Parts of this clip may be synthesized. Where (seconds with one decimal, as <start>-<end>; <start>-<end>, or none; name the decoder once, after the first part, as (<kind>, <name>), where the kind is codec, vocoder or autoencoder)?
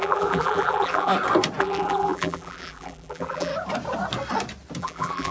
0.0-1.1 (vocoder, BigVGAN v2); 1.6-3.5; 4.8-5.3